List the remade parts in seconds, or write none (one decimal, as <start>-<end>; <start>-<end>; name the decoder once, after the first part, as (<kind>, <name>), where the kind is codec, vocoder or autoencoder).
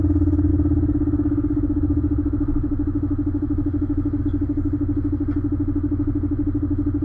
0.5-4.2 (autoencoder, DAC-VAE)